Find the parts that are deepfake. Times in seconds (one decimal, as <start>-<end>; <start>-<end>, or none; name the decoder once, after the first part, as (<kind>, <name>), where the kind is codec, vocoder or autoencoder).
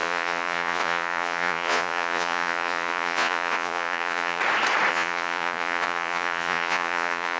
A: 0.0-4.4 (vocoder, Vocos); 4.9-7.4